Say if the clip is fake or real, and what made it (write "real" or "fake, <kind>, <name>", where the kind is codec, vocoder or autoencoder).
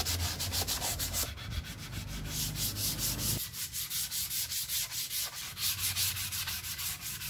real